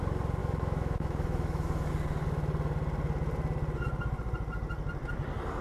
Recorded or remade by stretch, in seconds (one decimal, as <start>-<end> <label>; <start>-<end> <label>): 0.0-0.4 recorded; 0.4-1.9 remade; 1.9-5.6 recorded